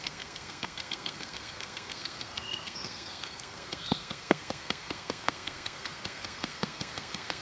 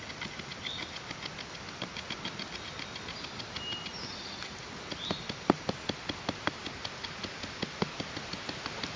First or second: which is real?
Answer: second